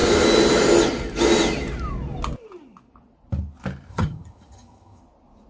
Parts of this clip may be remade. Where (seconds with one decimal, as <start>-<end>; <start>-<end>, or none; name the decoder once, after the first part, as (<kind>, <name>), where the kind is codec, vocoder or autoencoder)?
3.9-5.0 (vocoder, HiFi-GAN)